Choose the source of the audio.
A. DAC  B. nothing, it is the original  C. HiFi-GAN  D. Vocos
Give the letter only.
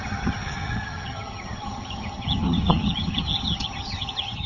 C